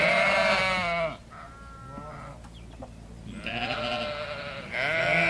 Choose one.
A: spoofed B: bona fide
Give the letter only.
B